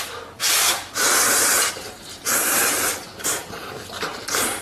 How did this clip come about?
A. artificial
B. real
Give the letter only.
B